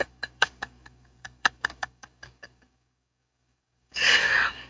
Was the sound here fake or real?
fake